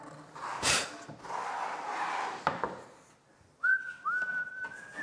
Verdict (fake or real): real